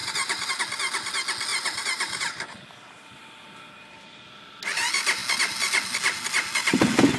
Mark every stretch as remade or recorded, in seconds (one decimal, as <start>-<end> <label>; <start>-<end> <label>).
0.0-0.5 remade; 0.5-1.5 recorded; 1.5-2.6 remade; 2.6-7.2 recorded